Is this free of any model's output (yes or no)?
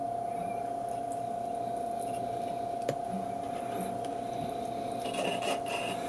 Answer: yes